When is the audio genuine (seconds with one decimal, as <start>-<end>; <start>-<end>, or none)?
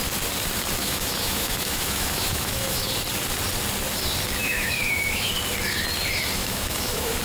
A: 0.0-0.8; 2.9-4.4; 5.3-6.4